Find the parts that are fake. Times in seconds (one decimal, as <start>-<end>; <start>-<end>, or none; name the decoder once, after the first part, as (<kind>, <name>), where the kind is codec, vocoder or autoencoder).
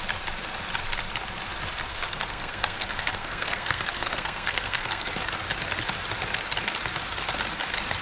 1.9-5.1 (codec, SNAC)